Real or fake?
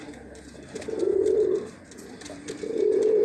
real